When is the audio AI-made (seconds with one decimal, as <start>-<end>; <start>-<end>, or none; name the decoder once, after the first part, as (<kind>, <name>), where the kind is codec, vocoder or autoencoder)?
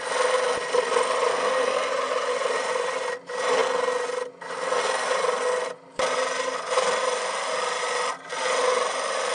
1.3-1.9 (codec, SNAC)